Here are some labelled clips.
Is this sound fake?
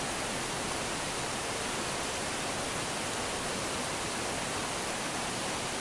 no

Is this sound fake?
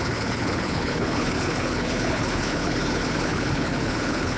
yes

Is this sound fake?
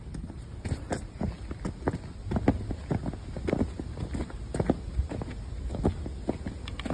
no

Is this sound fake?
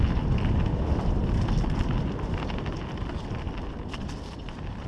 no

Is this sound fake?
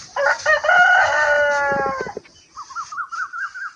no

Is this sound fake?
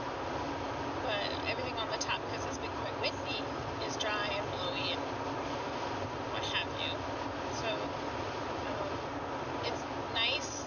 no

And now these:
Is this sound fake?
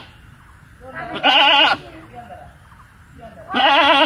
no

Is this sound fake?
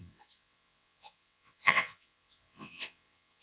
yes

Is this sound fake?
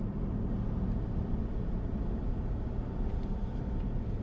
no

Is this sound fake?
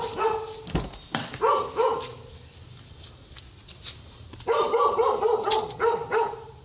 no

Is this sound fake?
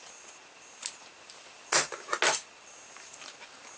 no